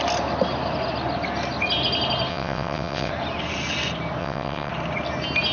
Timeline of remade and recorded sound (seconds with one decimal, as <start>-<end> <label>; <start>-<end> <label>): 0.0-2.3 recorded; 2.3-3.1 remade; 3.1-4.2 recorded; 4.2-4.7 remade; 4.7-5.5 recorded

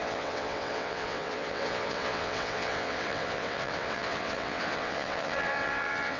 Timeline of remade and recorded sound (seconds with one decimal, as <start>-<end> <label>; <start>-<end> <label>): 0.0-6.2 remade

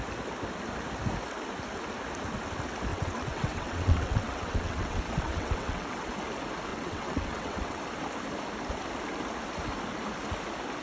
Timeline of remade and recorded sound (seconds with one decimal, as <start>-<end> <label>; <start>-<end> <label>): 0.0-2.9 recorded; 2.9-6.0 remade; 6.0-6.7 recorded; 6.7-7.8 remade; 7.8-10.8 recorded

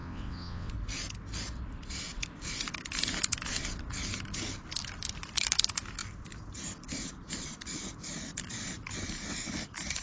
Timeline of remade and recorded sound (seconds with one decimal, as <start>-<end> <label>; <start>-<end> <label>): 0.0-0.7 remade; 0.7-10.0 recorded

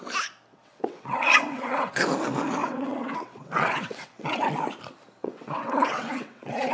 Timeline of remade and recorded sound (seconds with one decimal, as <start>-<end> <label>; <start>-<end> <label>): 0.0-0.5 recorded; 0.5-2.0 remade; 2.0-2.6 recorded; 2.6-4.4 remade; 4.4-5.2 recorded; 5.2-6.7 remade